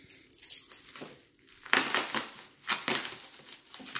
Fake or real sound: real